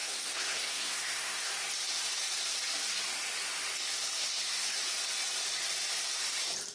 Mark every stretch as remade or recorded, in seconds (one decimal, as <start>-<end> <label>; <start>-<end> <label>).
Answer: 0.0-1.5 remade; 1.5-4.2 recorded; 4.2-4.8 remade; 4.8-6.7 recorded